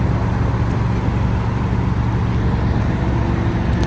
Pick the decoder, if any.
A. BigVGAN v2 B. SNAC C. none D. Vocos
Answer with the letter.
C